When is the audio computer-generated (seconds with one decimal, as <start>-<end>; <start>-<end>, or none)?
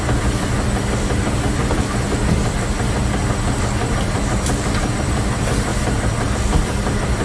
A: 0.0-5.7; 6.3-7.2